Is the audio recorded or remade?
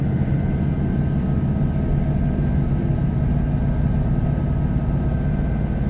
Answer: recorded